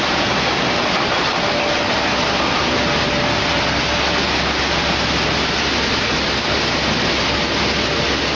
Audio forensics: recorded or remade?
recorded